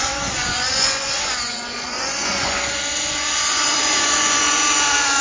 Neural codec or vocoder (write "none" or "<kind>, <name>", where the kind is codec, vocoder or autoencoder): vocoder, Vocos